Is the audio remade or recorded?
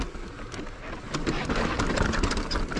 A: recorded